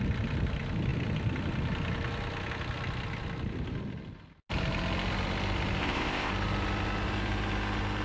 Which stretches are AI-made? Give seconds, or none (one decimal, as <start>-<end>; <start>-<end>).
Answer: 5.8-6.3